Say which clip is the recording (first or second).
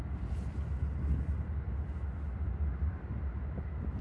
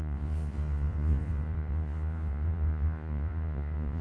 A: first